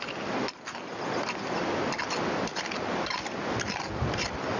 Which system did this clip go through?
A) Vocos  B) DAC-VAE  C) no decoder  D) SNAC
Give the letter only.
C